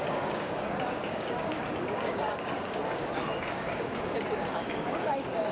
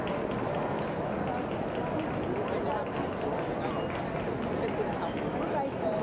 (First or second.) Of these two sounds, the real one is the second